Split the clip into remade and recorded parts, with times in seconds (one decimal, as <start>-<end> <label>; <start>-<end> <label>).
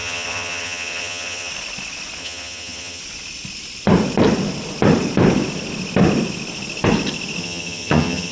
0.0-1.5 remade; 1.5-2.2 recorded; 2.2-3.0 remade; 3.0-7.4 recorded; 7.4-8.3 remade